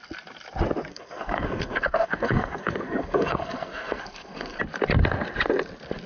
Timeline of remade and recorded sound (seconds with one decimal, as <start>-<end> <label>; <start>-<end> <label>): 0.0-0.9 recorded; 0.9-4.6 remade; 4.6-6.1 recorded